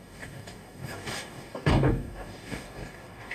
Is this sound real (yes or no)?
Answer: no